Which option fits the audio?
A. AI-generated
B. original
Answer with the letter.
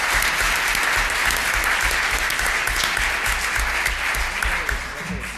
B